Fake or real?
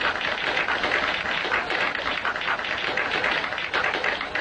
real